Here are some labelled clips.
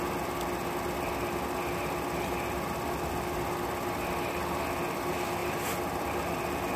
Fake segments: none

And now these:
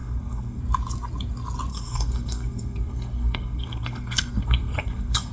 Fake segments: 0.0-0.6 (codec, SNAC); 1.7-5.3

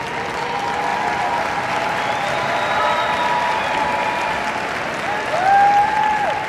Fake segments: none